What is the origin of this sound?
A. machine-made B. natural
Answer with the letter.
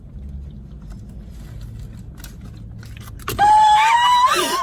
B